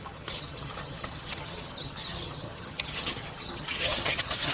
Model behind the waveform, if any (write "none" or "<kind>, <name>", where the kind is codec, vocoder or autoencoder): vocoder, HiFi-GAN